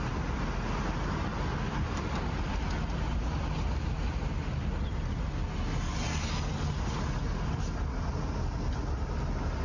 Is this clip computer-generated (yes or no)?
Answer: no